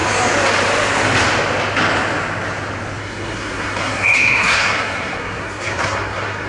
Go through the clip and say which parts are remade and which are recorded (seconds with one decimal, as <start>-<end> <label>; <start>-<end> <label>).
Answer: 0.0-3.0 recorded; 3.0-6.5 remade